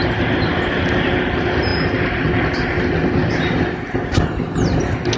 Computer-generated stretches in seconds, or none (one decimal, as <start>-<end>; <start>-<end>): none